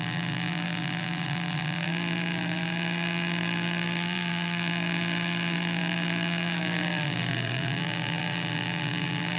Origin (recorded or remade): remade